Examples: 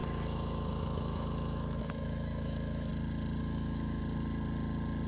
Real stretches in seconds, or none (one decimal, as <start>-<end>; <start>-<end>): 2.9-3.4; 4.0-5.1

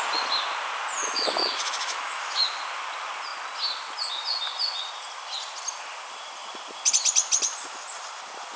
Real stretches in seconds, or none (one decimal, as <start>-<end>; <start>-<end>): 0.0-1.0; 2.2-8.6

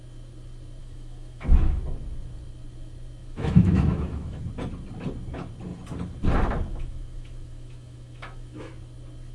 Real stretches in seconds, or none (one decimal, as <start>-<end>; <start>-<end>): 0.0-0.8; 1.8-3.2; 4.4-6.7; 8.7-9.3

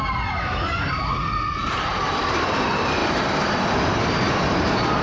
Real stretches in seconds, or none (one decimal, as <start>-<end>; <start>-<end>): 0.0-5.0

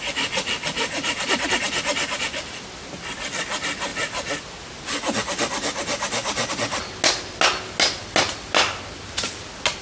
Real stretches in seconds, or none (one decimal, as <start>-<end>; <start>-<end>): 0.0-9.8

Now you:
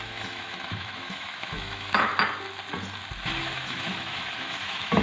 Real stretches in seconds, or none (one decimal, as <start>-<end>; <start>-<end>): 2.1-3.4

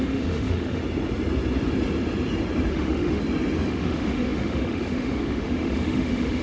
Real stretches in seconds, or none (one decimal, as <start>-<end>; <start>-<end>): 0.8-2.7; 3.2-3.7